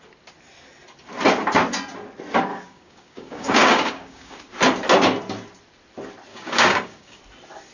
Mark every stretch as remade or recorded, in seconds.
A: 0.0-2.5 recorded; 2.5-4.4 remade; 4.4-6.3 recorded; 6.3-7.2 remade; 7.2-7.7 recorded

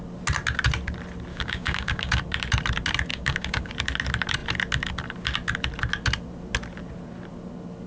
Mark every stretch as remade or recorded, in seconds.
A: 0.0-1.3 recorded; 1.3-2.2 remade; 2.2-3.1 recorded; 3.1-3.7 remade; 3.7-7.9 recorded